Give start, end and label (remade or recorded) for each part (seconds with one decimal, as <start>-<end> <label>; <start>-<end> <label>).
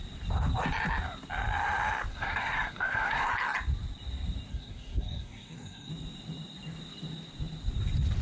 0.0-2.1 recorded; 2.1-3.3 remade; 3.3-4.5 recorded; 4.5-5.9 remade; 5.9-8.2 recorded